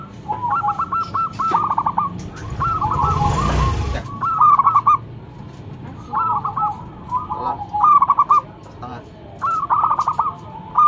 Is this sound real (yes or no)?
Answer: yes